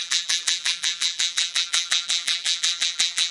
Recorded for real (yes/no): no